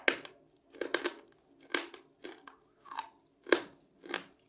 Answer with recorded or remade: recorded